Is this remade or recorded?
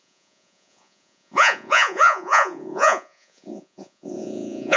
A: remade